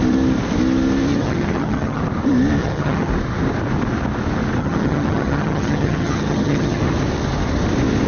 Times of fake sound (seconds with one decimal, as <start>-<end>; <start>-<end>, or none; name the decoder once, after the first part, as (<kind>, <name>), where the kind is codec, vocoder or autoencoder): 1.1-2.0 (vocoder, HiFi-GAN); 2.6-3.1; 4.6-6.8

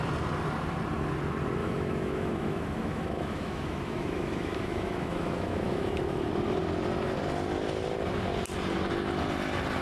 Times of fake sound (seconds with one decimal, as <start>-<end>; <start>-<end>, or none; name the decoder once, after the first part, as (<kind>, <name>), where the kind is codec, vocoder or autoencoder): 1.6-6.3 (autoencoder, DAC-VAE)